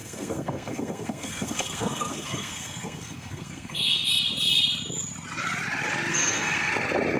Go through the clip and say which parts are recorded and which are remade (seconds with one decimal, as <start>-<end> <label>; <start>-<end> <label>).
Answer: 0.0-4.1 remade; 4.1-6.1 recorded; 6.1-6.7 remade; 6.7-7.2 recorded